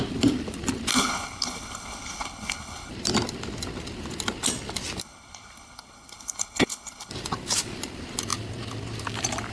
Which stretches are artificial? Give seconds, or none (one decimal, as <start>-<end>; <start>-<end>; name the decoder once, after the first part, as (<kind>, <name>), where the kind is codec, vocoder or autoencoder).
0.9-2.9 (codec, HILCodec); 5.0-7.1